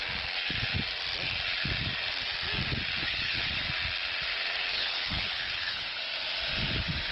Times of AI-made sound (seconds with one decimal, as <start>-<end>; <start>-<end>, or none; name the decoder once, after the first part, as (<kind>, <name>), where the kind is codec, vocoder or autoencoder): 3.0-3.6 (codec, HILCodec); 4.7-6.0